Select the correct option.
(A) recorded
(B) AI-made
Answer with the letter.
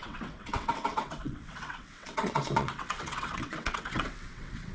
B